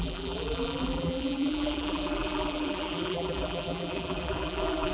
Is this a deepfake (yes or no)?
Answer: yes